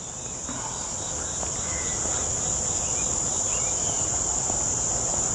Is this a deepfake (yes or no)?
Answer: no